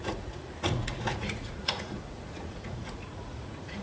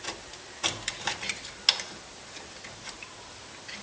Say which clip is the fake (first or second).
first